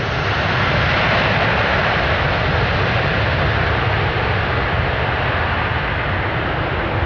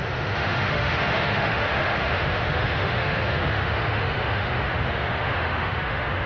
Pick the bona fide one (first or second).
first